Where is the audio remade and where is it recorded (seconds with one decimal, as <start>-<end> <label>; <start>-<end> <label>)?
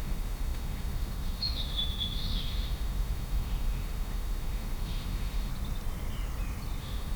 0.0-5.5 remade; 5.5-6.8 recorded; 6.8-7.2 remade